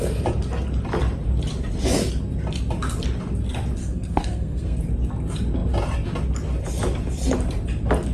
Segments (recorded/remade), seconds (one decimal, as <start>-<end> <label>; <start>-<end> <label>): 0.0-3.8 recorded; 3.8-4.8 remade; 4.8-8.1 recorded